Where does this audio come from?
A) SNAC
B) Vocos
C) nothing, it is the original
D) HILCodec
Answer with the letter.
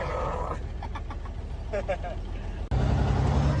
C